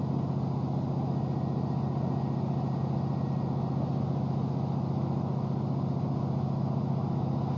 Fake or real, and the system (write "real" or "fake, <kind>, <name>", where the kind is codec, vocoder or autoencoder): real